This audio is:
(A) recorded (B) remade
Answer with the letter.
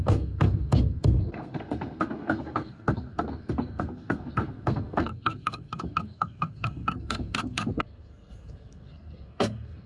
B